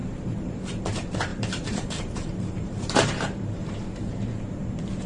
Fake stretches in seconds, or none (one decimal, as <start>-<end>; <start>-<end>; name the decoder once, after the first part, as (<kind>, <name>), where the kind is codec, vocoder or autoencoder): 0.0-0.6 (vocoder, BigVGAN v2); 1.3-4.4

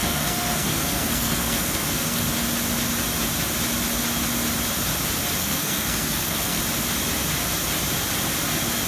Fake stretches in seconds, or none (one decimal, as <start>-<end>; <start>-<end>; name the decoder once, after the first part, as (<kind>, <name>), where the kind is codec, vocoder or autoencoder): 0.0-2.2 (codec, SNAC); 5.4-6.6

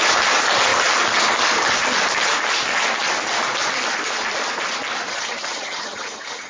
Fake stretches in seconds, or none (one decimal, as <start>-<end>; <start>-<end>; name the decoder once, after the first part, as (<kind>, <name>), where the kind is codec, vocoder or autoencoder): 5.1-6.5 (vocoder, HiFi-GAN)

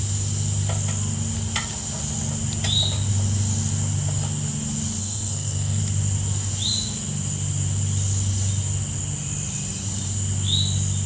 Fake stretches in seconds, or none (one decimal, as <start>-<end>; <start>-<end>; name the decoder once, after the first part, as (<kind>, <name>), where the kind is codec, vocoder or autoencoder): 5.0-5.8 (codec, SNAC)

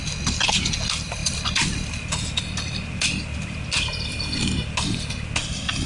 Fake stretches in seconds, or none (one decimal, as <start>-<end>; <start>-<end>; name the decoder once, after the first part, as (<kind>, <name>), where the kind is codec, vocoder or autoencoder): none